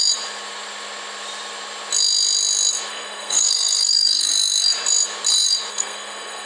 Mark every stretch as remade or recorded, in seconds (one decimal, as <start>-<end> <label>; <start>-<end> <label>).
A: 0.0-2.9 recorded; 2.9-4.3 remade; 4.3-5.7 recorded; 5.7-6.5 remade